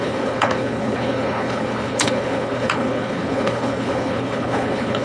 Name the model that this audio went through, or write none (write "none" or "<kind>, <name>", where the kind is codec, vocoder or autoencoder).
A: codec, HILCodec